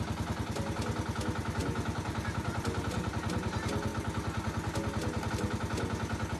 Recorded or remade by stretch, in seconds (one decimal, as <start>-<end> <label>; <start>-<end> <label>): 0.0-1.6 recorded; 1.6-3.1 remade; 3.1-6.4 recorded